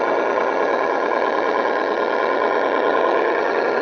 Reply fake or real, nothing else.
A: fake